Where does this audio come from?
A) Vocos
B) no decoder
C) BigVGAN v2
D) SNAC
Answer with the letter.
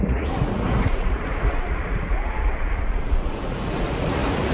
A